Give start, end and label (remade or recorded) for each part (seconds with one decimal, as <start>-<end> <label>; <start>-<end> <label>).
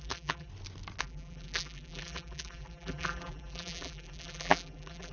0.0-0.5 remade; 0.5-1.0 recorded; 1.0-5.1 remade